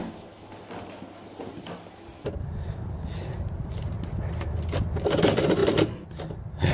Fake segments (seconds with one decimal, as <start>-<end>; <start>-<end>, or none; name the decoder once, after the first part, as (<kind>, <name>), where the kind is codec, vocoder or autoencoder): none

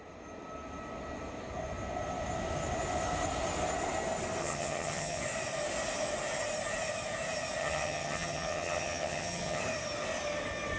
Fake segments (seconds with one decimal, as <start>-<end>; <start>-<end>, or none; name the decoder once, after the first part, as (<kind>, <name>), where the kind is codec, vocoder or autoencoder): 4.4-5.2 (vocoder, HiFi-GAN); 7.6-9.6

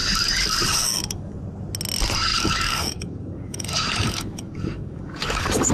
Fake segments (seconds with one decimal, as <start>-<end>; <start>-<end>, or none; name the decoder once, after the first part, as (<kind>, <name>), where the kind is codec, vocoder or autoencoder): 0.0-1.4 (codec, DAC); 2.3-5.7

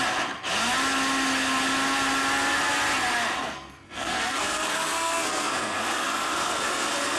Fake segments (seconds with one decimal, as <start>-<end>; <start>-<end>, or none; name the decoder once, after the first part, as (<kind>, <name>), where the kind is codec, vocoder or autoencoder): 3.4-7.2 (codec, SNAC)

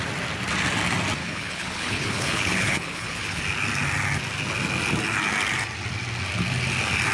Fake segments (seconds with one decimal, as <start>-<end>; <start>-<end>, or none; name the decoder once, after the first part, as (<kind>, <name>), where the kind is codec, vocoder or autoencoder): 1.2-3.4 (codec, HILCodec)